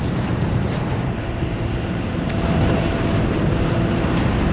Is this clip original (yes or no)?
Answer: no